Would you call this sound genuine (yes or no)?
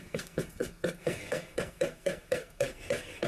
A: no